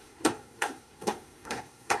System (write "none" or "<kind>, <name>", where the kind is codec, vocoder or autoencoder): codec, SNAC